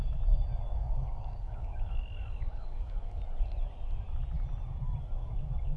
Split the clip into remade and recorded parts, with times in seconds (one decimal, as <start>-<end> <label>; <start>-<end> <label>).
0.0-0.7 recorded; 0.7-3.2 remade; 3.2-5.2 recorded; 5.2-5.8 remade